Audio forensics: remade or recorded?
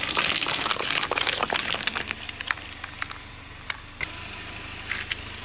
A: remade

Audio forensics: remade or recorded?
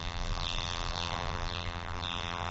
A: remade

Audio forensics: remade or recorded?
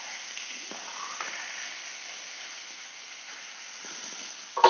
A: recorded